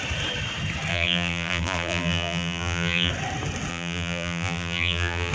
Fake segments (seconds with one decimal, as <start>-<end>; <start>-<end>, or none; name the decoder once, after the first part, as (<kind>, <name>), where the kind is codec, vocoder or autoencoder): 0.9-3.1 (vocoder, BigVGAN v2); 3.7-5.3